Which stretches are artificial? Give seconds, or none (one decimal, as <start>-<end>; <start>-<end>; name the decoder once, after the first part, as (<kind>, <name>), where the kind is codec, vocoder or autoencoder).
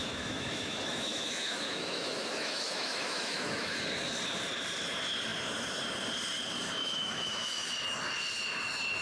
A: 0.0-3.8 (autoencoder, DAC-VAE); 6.8-7.7